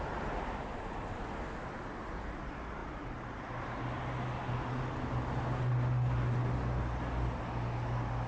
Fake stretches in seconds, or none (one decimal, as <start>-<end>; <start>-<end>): none